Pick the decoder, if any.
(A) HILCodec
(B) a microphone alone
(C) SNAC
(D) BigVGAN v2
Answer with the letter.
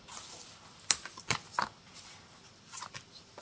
B